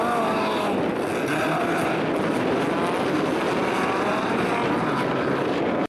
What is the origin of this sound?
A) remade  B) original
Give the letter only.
B